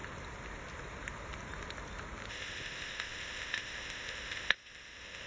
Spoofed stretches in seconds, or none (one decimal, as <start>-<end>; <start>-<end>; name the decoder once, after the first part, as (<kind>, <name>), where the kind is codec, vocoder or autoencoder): 2.3-5.3 (codec, ZipCodec)